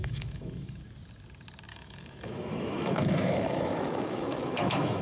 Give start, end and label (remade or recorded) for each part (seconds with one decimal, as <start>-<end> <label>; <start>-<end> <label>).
0.0-0.8 remade; 0.8-1.7 recorded; 1.7-5.0 remade